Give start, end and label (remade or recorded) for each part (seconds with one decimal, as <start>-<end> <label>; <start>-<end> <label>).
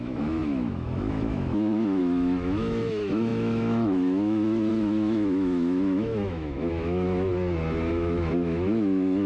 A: 0.0-7.3 remade; 7.3-7.9 recorded; 7.9-9.3 remade